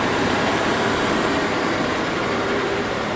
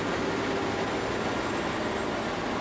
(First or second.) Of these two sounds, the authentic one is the second